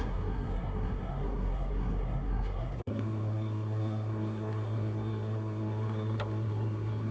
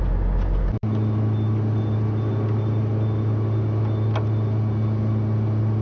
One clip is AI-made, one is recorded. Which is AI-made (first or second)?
first